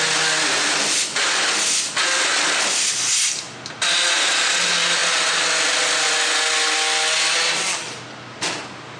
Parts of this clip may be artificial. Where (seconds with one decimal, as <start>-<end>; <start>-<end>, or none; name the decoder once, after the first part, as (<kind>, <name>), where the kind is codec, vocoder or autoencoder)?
none